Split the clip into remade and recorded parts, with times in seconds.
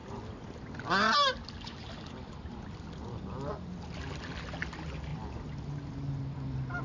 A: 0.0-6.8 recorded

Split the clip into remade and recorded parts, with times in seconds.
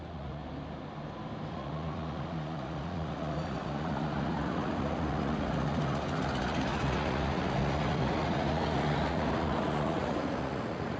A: 0.0-0.4 remade; 0.4-1.5 recorded; 1.5-11.0 remade